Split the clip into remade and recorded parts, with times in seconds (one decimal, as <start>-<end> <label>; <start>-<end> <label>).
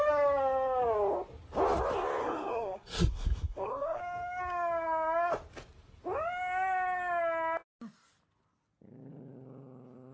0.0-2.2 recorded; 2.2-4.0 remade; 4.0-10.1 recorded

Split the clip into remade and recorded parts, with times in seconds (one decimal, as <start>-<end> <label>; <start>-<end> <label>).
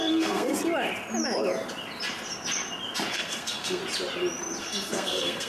0.0-0.5 remade; 0.5-3.1 recorded; 3.1-3.8 remade; 3.8-4.6 recorded; 4.6-5.5 remade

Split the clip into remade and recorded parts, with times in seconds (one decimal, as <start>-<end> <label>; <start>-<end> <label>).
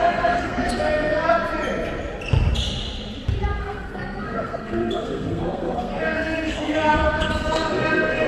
0.0-1.4 remade; 1.4-3.6 recorded; 3.6-8.3 remade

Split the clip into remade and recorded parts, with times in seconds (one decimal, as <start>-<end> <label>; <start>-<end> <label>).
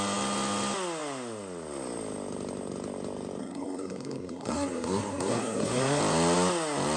0.0-3.4 recorded; 3.4-6.0 remade; 6.0-7.0 recorded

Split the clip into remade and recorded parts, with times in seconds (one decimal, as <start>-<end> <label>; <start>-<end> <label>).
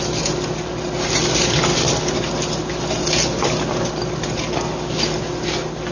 0.0-5.9 recorded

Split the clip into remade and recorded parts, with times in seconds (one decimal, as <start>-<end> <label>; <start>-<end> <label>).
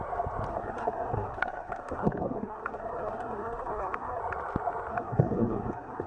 0.0-0.5 recorded; 0.5-4.2 remade; 4.2-4.9 recorded; 4.9-6.1 remade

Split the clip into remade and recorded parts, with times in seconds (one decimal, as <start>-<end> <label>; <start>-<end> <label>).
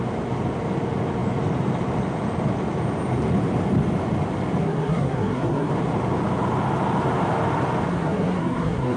0.0-4.6 recorded; 4.6-5.7 remade; 5.7-7.9 recorded; 7.9-9.0 remade